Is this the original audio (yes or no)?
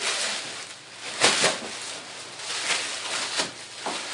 yes